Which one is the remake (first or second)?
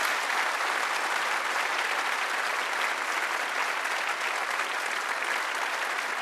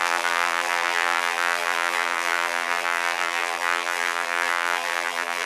second